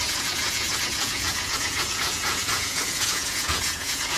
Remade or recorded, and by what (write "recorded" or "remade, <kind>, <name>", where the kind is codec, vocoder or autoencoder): remade, vocoder, Vocos